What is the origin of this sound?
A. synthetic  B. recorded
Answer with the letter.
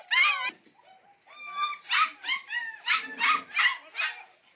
B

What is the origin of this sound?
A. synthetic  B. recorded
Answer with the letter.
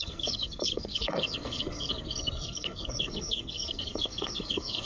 A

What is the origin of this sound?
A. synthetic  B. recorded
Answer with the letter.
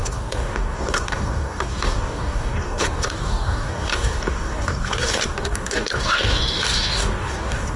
A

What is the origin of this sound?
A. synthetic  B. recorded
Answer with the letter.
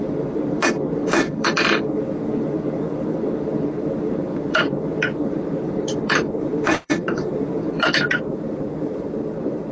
A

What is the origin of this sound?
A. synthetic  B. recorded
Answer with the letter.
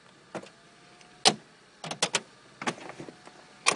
B